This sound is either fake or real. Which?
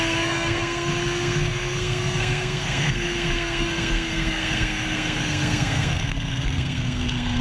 fake